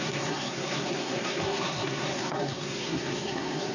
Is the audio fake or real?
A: fake